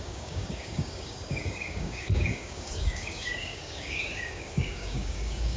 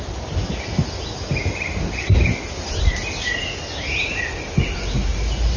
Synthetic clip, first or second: first